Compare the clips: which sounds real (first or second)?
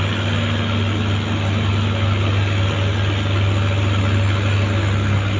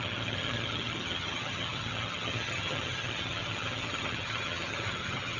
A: first